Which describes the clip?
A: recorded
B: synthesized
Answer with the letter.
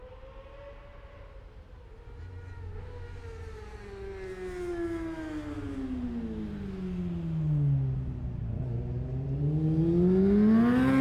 A